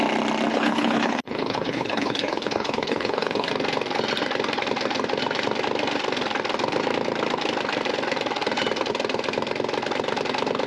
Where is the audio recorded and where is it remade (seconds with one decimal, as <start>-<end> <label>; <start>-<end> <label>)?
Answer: 0.0-0.5 recorded; 0.5-3.5 remade; 3.5-10.7 recorded